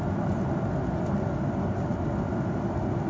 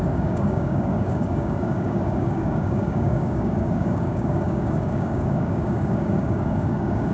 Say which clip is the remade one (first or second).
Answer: second